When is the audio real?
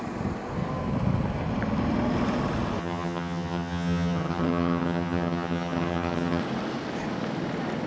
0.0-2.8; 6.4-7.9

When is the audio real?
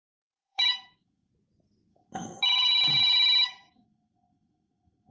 1.3-1.9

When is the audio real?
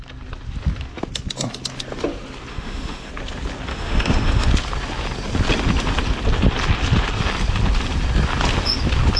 0.0-2.5; 3.1-3.7; 4.5-9.2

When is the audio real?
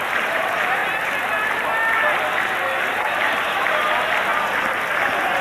0.8-2.9; 3.8-5.0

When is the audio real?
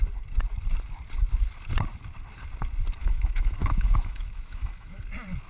0.0-3.0; 5.0-5.5